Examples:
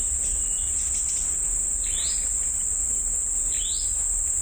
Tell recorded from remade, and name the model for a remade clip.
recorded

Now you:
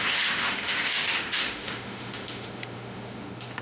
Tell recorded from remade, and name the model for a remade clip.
remade, autoencoder, DAC-VAE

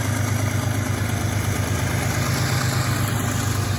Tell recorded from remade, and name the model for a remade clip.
recorded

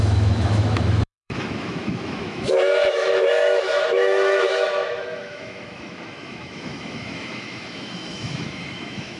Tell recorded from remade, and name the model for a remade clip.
remade, autoencoder, DAC-VAE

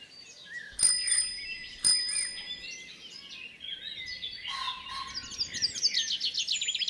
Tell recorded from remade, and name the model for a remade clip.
recorded